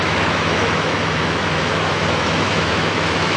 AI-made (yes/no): yes